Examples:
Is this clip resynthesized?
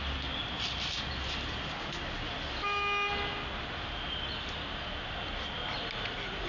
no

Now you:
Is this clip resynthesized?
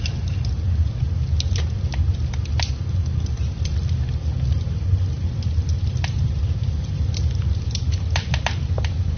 no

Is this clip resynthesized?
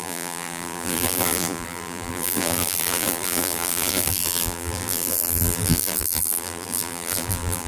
yes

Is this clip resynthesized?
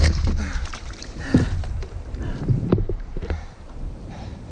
yes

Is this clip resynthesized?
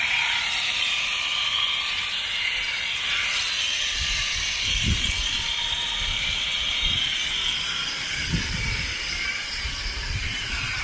yes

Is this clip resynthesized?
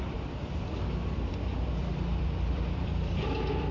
yes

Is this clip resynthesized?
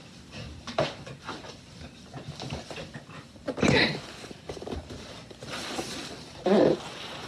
yes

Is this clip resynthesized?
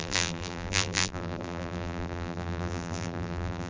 yes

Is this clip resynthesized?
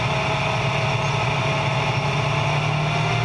no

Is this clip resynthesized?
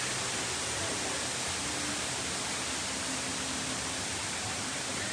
no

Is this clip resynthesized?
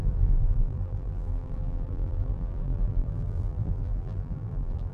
yes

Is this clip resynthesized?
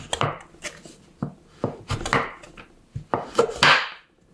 no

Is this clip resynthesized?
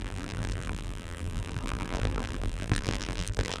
yes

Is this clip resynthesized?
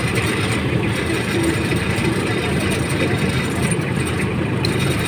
yes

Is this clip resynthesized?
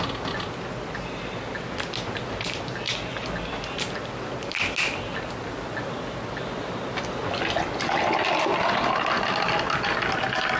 no